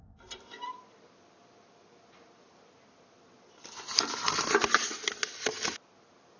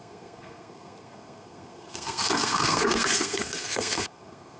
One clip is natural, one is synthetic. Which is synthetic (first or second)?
second